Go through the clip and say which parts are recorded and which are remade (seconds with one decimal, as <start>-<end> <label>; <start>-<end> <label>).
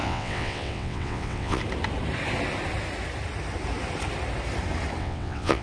0.0-1.6 remade; 1.6-5.0 recorded; 5.0-5.6 remade